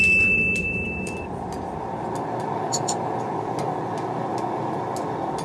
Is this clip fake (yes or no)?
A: no